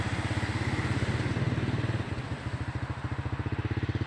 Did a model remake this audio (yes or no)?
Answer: no